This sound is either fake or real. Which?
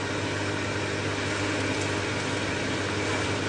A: real